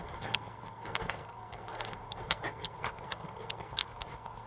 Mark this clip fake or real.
fake